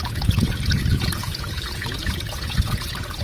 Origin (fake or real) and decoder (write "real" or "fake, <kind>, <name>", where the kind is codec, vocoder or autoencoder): fake, vocoder, Vocos